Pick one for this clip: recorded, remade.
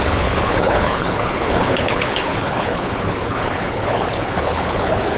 remade